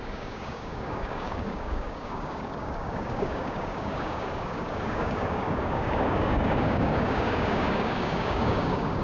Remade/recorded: remade